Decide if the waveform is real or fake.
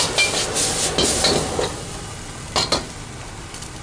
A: real